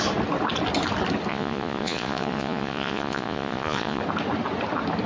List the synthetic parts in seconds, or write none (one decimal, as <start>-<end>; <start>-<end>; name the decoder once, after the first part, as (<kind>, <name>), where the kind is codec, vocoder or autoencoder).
1.3-4.0 (vocoder, Vocos)